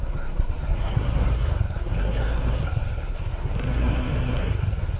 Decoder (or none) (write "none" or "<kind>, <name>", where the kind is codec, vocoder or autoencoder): codec, SNAC